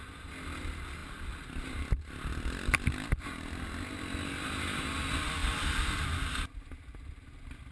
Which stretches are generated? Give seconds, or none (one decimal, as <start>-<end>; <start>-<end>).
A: none